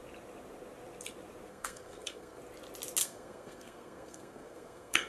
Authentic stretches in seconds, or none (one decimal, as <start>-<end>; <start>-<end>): 0.0-1.5; 2.4-3.0